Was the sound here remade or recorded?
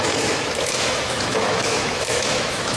remade